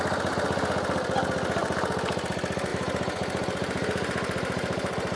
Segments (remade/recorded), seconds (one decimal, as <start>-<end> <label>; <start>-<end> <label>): 0.0-2.7 recorded; 2.7-5.2 remade